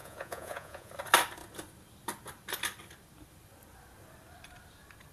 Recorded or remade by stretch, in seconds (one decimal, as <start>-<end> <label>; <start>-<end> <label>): 0.0-0.9 remade; 0.9-5.1 recorded